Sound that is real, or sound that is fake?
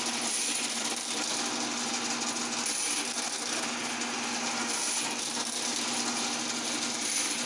real